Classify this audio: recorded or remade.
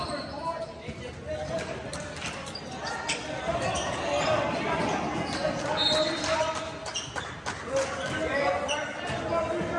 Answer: recorded